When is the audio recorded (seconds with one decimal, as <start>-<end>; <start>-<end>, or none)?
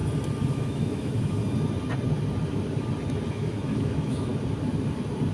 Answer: 0.0-0.5; 1.4-3.3; 4.3-5.3